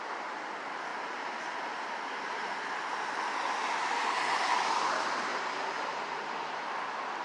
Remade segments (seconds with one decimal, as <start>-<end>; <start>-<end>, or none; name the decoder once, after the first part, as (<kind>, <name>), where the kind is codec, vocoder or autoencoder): 0.9-2.5 (vocoder, BigVGAN v2); 5.3-6.7